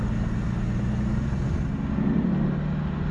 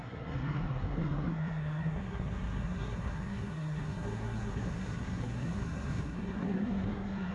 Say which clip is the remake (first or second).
second